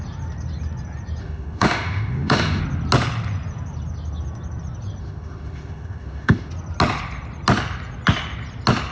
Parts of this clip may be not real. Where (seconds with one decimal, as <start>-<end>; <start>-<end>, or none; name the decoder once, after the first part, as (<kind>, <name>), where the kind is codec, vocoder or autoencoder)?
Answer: 1.2-2.6 (autoencoder, DAC-VAE); 5.0-6.5